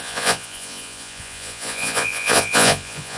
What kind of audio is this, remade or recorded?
remade